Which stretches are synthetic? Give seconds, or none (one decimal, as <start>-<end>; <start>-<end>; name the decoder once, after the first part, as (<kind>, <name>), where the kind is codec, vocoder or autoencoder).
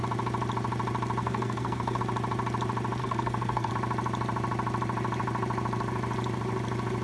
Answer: 1.2-2.0 (codec, SNAC); 3.0-3.7